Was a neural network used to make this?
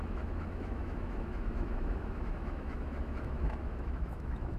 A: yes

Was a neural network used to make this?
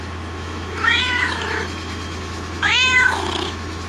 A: yes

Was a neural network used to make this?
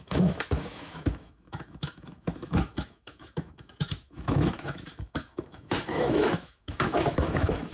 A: yes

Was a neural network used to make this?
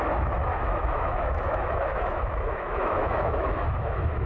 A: yes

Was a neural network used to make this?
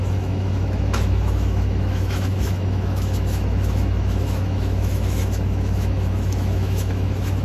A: yes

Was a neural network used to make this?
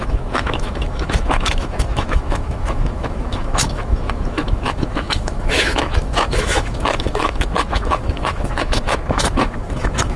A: yes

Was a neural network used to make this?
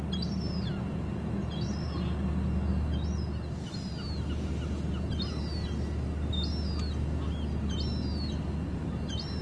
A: no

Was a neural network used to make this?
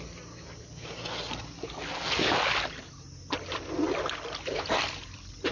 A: no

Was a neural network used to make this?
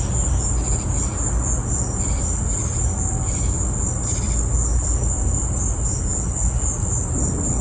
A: no